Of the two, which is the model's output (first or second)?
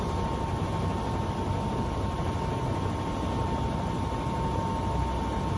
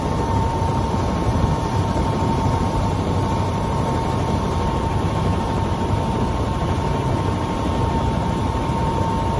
second